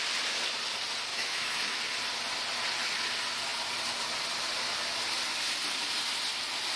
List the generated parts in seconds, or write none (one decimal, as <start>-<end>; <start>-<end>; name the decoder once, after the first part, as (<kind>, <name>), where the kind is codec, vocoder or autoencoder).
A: 1.1-1.8 (autoencoder, DAC-VAE)